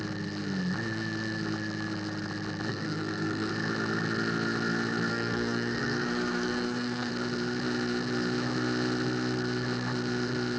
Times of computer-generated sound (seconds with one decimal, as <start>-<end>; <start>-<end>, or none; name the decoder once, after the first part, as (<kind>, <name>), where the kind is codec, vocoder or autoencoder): 2.7-3.5 (codec, SNAC); 5.1-7.1